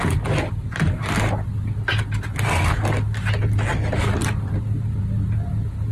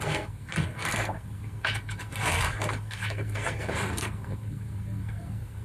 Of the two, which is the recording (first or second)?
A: first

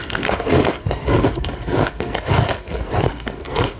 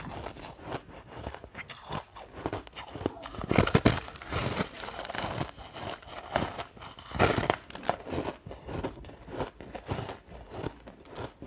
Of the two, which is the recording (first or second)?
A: second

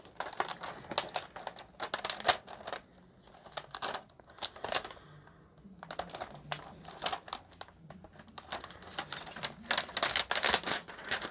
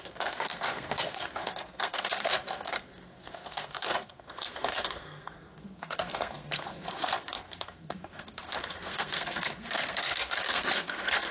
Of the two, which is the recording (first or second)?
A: first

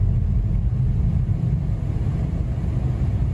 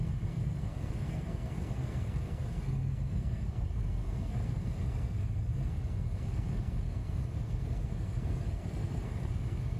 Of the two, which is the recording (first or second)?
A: first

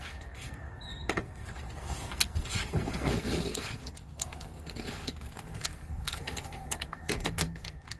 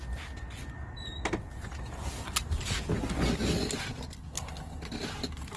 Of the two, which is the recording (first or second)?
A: second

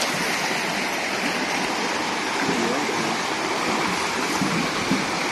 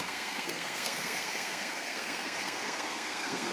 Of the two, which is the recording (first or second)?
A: first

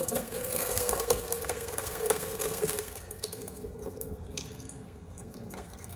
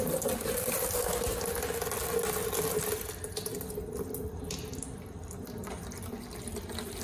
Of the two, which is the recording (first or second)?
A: second